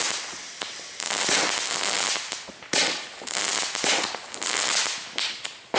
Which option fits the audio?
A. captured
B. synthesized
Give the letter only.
A